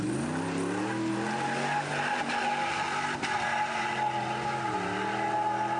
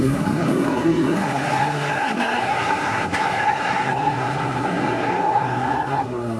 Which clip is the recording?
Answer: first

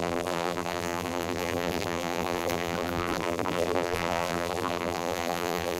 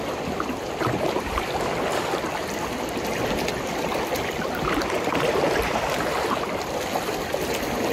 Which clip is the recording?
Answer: second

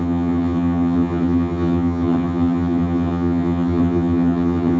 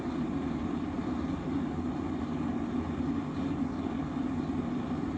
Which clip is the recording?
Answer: second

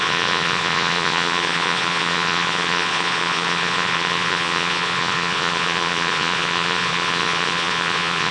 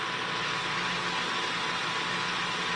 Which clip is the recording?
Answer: second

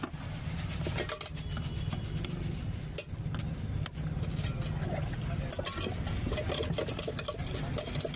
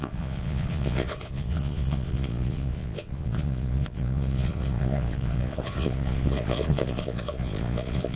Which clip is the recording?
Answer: first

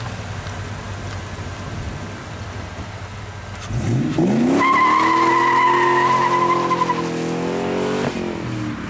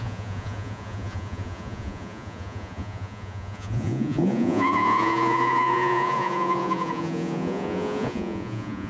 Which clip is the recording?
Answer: first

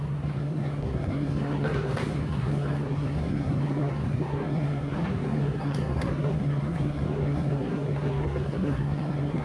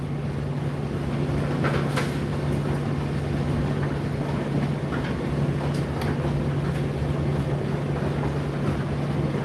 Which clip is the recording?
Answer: second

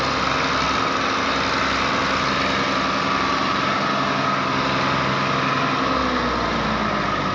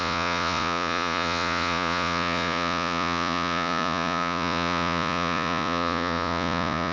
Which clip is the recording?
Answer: first